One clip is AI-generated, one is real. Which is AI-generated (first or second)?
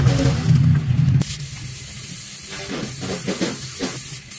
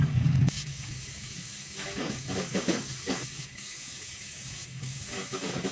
second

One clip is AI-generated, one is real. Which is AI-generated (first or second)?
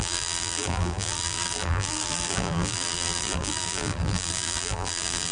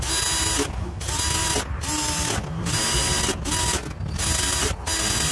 first